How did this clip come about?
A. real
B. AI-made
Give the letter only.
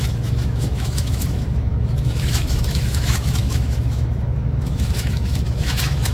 B